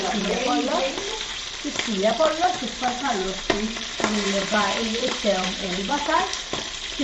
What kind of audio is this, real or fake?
fake